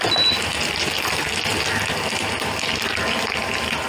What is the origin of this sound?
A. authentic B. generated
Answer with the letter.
A